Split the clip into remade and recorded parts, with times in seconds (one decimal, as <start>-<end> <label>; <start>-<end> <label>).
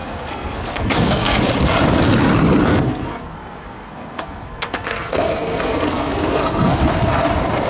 0.0-1.4 remade; 1.4-2.7 recorded; 2.7-6.8 remade; 6.8-7.7 recorded